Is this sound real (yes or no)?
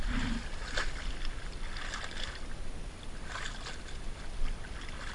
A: yes